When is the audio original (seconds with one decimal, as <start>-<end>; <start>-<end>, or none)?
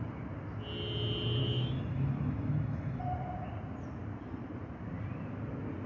0.0-1.4; 3.0-5.9